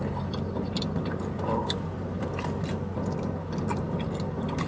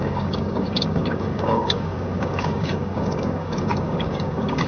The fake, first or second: second